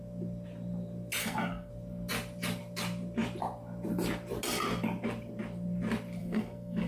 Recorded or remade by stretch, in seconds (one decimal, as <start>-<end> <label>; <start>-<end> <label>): 0.0-1.2 recorded; 1.2-1.7 remade; 1.7-6.2 recorded; 6.2-6.9 remade